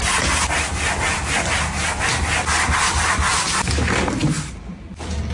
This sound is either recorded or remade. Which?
recorded